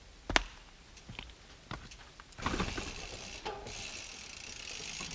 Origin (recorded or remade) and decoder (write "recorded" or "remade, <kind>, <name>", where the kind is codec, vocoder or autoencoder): recorded